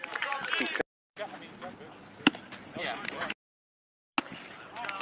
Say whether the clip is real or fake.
real